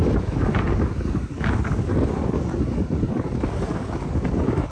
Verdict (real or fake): fake